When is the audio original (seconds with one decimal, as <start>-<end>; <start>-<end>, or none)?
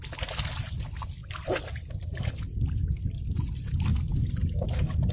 0.0-5.1